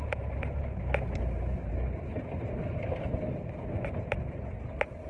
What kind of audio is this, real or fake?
real